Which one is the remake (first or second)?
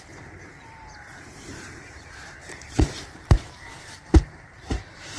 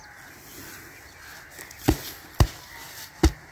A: first